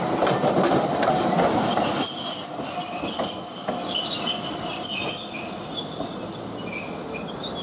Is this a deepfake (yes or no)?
no